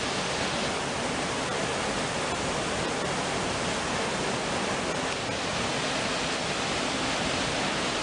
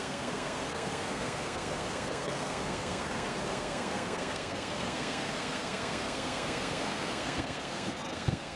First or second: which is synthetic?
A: second